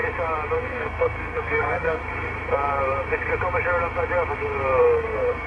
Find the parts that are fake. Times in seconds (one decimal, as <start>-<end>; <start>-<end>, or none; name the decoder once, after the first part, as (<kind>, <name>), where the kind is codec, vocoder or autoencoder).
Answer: 0.6-2.0 (codec, SNAC); 4.8-5.5